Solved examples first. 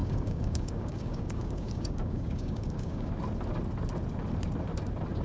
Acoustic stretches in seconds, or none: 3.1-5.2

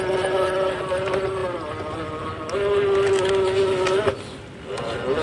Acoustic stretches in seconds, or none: 0.0-5.2

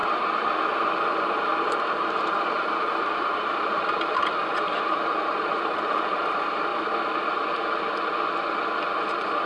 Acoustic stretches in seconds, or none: 6.7-8.9

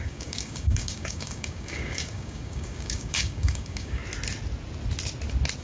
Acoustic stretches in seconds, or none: 4.0-5.6

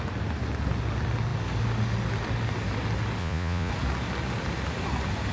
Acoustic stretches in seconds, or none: 0.0-3.2; 3.7-5.3

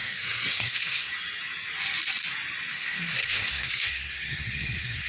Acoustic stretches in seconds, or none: 1.1-2.7

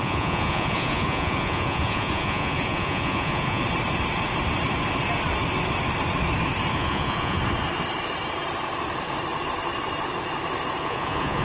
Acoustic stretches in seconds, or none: 3.6-6.7; 7.4-10.8